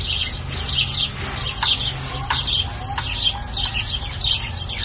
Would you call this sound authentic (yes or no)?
yes